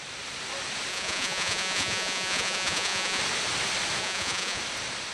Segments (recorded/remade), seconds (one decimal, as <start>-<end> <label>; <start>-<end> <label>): 0.0-0.9 recorded; 0.9-3.2 remade; 3.2-4.0 recorded; 4.0-4.6 remade; 4.6-5.1 recorded

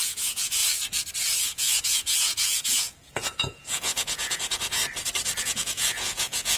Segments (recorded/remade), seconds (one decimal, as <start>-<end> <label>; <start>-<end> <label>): 0.0-0.6 remade; 0.6-1.4 recorded; 1.4-4.8 remade; 4.8-5.4 recorded; 5.4-6.6 remade

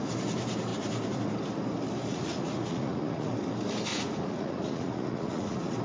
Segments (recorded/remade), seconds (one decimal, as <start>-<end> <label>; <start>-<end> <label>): 0.0-2.1 recorded; 2.1-3.3 remade; 3.3-3.9 recorded; 3.9-5.8 remade

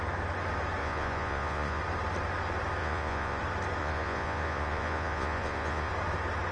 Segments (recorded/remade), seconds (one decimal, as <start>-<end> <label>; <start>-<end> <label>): 0.0-0.8 recorded; 0.8-1.8 remade; 1.8-2.8 recorded; 2.8-3.4 remade; 3.4-3.8 recorded; 3.8-5.9 remade; 5.9-6.5 recorded

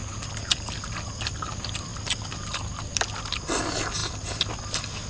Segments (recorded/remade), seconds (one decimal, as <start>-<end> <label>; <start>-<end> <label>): 0.0-5.1 recorded

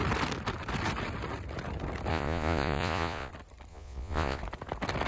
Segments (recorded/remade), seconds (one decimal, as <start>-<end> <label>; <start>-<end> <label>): 0.0-2.1 recorded; 2.1-3.3 remade; 3.3-3.7 recorded; 3.7-4.4 remade; 4.4-5.1 recorded

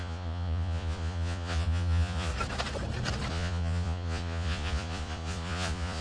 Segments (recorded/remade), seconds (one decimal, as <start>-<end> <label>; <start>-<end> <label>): 0.0-2.3 remade; 2.3-3.3 recorded; 3.3-6.0 remade

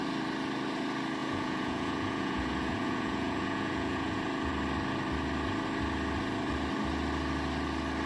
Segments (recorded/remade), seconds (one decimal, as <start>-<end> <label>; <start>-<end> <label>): 0.0-1.2 recorded; 1.2-4.5 remade; 4.5-8.1 recorded